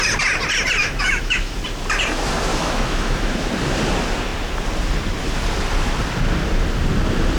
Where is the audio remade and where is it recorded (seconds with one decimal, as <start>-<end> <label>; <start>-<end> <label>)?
0.0-0.8 recorded; 0.8-1.6 remade; 1.6-2.5 recorded; 2.5-3.5 remade; 3.5-7.4 recorded